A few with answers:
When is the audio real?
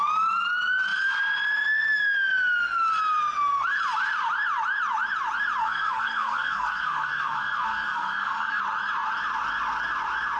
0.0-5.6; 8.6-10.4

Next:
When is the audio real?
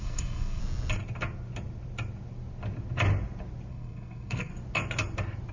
0.6-3.7; 4.5-5.5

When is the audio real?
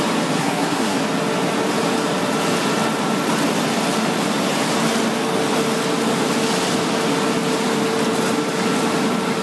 0.0-0.4; 1.0-9.4